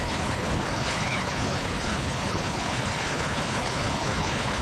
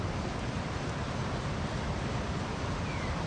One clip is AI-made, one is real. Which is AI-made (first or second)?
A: first